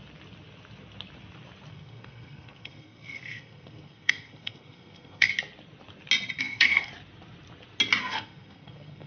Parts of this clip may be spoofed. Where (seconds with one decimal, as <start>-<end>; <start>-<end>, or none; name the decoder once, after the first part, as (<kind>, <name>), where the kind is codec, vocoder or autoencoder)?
1.7-5.3 (codec, SNAC); 6.4-6.9; 8.0-9.1